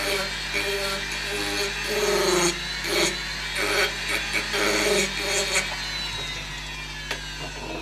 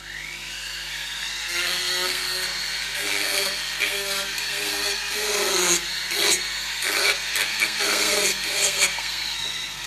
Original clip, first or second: first